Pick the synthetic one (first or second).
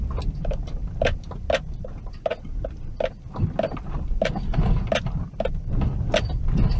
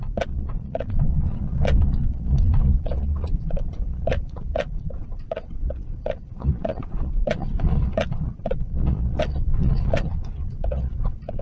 second